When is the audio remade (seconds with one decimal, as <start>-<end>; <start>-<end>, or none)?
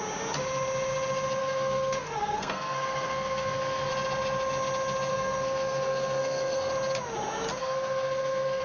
1.4-3.9; 5.1-6.7; 7.6-8.6